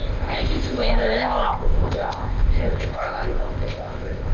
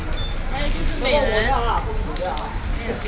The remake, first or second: first